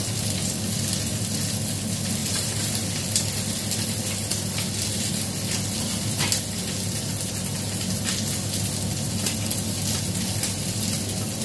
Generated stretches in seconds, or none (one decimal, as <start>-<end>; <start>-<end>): 2.2-3.0